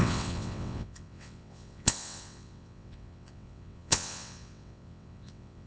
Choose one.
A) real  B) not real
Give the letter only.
B